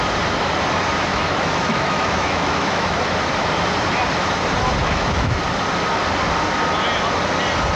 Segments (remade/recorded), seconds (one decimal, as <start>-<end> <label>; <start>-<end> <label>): 0.0-1.1 recorded; 1.1-3.0 remade; 3.0-4.8 recorded; 4.8-5.4 remade; 5.4-7.8 recorded